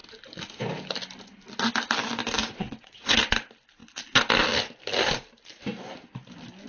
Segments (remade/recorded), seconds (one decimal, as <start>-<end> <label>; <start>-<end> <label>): 0.0-2.4 recorded; 2.4-3.2 remade; 3.2-6.7 recorded